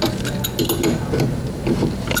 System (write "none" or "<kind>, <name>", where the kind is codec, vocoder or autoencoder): none